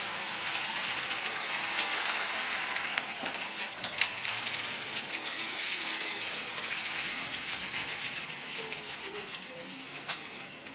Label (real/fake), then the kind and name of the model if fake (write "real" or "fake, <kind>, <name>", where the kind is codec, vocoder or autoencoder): fake, codec, SNAC